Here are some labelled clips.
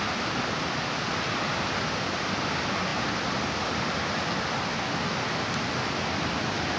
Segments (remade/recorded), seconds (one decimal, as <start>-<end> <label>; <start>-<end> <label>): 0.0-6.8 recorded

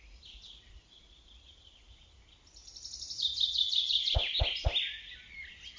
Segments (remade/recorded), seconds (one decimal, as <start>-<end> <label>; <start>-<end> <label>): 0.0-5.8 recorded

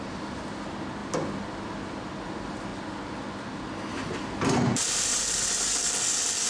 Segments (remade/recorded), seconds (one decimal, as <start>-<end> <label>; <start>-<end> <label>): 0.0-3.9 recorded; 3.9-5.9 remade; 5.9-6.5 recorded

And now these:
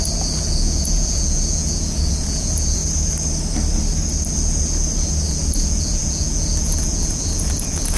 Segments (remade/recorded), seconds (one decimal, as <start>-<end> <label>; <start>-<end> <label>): 0.0-2.8 remade; 2.8-5.3 recorded; 5.3-8.0 remade

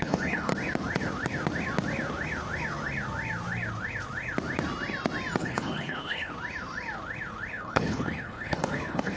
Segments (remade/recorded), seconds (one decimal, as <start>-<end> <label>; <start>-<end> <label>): 0.0-0.5 remade; 0.5-5.4 recorded; 5.4-6.3 remade; 6.3-7.5 recorded; 7.5-9.2 remade